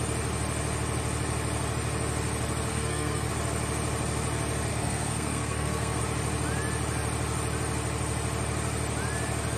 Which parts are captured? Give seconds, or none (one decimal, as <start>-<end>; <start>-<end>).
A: 0.0-2.7; 3.3-4.7; 6.0-9.6